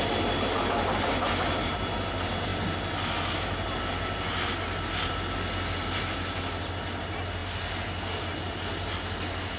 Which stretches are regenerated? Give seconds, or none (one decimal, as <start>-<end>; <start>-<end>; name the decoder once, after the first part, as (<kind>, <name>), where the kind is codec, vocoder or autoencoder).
none